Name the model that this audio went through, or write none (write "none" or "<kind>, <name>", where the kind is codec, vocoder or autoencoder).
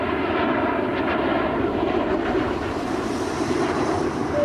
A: vocoder, BigVGAN v2